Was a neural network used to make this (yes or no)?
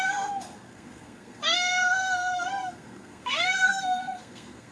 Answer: yes